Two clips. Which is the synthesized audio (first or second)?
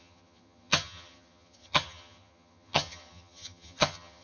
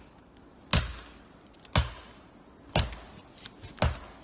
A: first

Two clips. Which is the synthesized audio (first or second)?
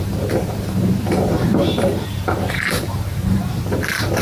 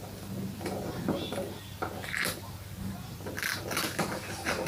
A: first